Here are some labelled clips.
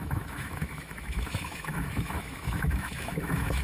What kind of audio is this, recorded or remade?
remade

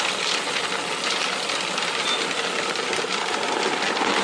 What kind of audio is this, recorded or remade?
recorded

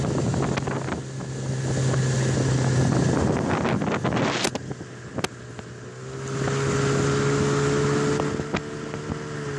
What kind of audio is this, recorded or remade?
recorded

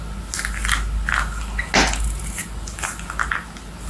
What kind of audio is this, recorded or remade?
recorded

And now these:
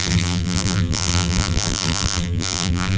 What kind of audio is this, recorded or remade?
remade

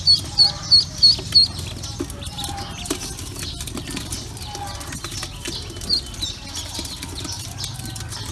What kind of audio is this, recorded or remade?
recorded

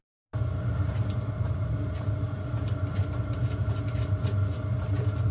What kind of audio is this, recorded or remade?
recorded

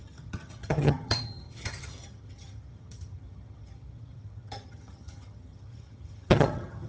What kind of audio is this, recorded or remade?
remade